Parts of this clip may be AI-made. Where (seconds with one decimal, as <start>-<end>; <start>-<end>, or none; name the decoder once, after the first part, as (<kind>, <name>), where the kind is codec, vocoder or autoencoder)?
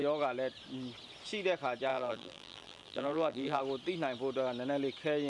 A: 1.9-3.6 (vocoder, BigVGAN v2)